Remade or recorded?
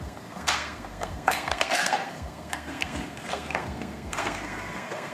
remade